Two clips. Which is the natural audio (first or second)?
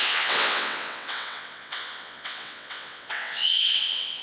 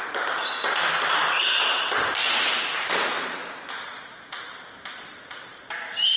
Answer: second